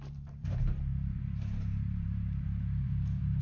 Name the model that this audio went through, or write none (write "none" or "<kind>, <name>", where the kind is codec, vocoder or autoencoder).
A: vocoder, BigVGAN v2